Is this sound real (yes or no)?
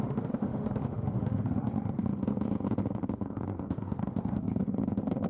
no